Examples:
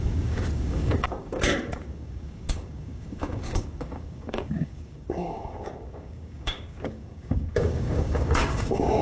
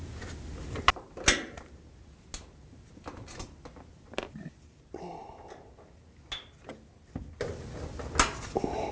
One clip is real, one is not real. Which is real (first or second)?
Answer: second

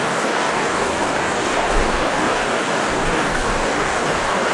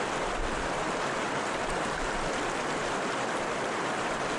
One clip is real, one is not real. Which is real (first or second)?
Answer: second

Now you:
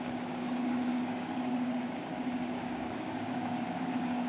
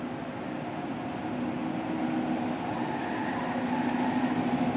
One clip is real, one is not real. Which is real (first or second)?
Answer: second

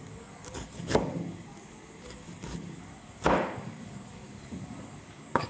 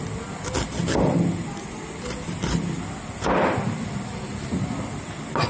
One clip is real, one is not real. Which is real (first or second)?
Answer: second